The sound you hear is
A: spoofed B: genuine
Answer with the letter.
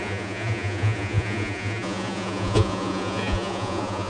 A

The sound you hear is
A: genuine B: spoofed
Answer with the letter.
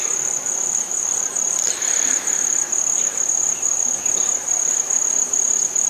B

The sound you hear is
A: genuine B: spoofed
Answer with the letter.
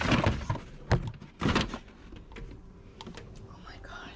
A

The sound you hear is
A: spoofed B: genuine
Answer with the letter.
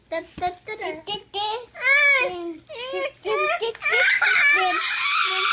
B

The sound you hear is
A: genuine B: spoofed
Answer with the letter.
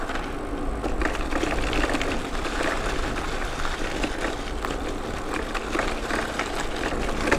A